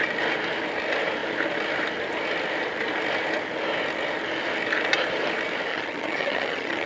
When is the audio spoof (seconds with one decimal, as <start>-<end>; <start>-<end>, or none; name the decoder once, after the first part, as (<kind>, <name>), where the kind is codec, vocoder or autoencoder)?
5.7-6.9 (vocoder, HiFi-GAN)